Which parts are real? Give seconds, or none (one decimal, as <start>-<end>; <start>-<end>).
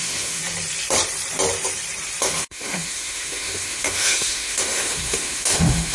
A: 0.4-2.2